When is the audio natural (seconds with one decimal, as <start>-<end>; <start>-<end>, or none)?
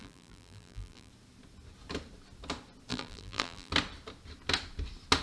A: 1.1-2.9; 3.7-5.2